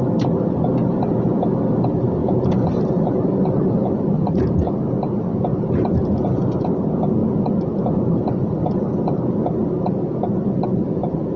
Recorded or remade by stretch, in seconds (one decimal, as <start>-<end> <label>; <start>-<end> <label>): 0.0-2.2 recorded; 2.2-4.7 remade; 4.7-5.5 recorded; 5.5-6.2 remade; 6.2-11.4 recorded